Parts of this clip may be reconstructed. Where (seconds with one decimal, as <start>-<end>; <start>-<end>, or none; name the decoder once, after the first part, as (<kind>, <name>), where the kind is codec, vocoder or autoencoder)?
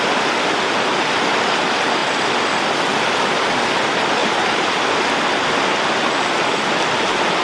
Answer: 4.2-4.7 (vocoder, BigVGAN v2)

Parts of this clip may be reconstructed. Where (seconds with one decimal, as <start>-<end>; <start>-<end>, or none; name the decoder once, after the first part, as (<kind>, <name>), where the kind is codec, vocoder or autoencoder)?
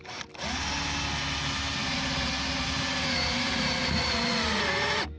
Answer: 1.8-4.6 (vocoder, BigVGAN v2)